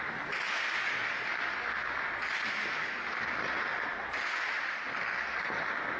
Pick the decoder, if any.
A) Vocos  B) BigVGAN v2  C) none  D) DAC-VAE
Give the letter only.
C